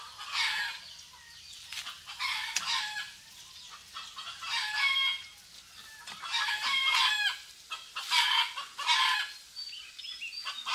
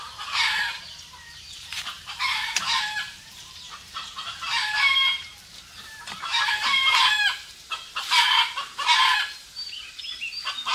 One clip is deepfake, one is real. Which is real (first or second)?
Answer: first